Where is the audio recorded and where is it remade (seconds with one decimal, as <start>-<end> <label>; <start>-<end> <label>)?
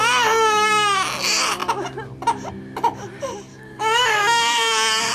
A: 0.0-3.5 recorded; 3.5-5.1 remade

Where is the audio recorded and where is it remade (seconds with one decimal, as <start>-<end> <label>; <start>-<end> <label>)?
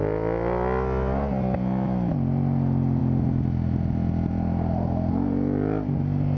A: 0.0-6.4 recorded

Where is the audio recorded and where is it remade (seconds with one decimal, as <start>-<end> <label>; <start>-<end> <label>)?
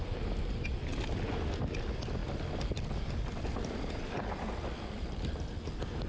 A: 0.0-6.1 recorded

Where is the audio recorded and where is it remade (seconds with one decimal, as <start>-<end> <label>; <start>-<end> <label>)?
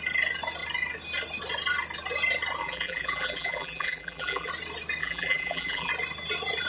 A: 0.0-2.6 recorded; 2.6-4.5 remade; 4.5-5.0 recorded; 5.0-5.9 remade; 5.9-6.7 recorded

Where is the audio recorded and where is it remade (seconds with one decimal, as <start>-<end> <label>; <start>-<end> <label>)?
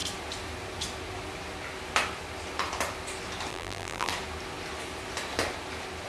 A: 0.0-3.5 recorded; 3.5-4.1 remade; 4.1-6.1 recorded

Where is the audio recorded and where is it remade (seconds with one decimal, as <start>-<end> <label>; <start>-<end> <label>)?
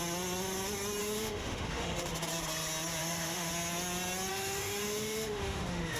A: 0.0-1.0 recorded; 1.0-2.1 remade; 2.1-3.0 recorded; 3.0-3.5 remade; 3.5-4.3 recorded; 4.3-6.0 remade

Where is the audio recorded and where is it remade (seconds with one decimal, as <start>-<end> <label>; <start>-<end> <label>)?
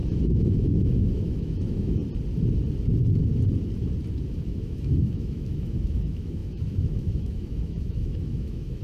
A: 0.0-2.0 remade; 2.0-4.4 recorded; 4.4-8.8 remade